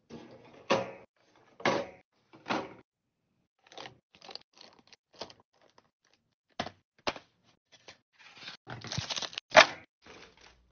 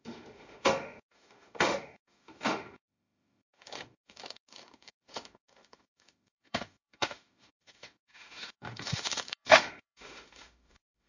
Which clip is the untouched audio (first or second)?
first